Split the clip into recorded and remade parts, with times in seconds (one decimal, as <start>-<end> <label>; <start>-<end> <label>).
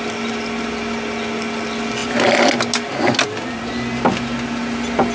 0.0-5.1 recorded